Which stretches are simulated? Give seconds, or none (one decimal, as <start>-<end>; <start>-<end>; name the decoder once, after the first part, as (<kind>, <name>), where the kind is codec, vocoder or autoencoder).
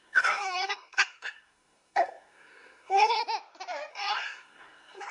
0.0-3.2 (codec, SNAC); 3.9-5.1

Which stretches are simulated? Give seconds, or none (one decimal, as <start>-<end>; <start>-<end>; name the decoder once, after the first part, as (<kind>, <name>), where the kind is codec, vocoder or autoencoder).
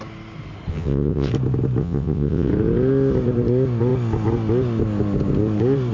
0.7-1.3 (vocoder, WaveNeXt); 1.8-2.5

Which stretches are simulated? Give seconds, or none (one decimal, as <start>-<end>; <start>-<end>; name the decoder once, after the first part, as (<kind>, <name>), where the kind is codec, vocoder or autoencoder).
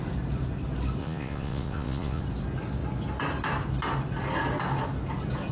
1.0-2.2 (vocoder, Vocos)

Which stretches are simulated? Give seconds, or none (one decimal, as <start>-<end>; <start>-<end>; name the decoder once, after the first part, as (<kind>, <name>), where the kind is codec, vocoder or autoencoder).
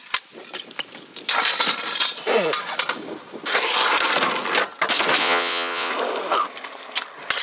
5.2-5.9 (vocoder, WaveNeXt)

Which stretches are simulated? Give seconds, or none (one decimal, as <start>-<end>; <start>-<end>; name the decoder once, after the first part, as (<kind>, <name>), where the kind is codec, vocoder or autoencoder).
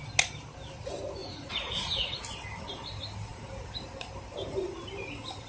1.2-2.2 (vocoder, Vocos)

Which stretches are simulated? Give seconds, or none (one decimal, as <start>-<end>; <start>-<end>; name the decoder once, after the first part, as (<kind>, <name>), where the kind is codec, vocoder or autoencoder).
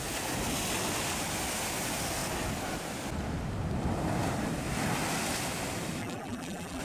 6.0-6.8 (vocoder, BigVGAN v2)